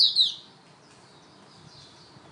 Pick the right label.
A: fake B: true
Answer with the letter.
B